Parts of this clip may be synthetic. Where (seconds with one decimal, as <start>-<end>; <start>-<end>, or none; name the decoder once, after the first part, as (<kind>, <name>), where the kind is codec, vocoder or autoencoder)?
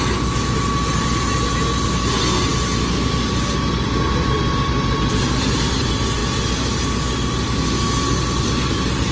none